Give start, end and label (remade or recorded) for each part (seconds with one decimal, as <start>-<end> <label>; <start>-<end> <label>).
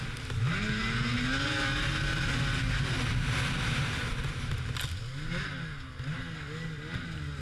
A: 0.0-7.4 recorded